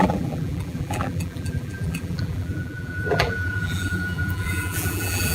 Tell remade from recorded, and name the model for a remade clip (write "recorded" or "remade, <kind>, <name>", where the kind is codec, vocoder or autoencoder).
remade, vocoder, BigVGAN v2